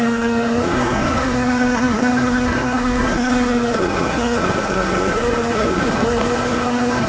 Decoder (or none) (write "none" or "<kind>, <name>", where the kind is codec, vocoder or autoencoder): codec, SNAC